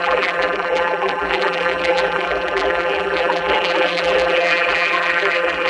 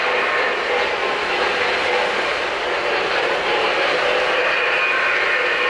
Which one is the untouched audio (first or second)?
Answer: second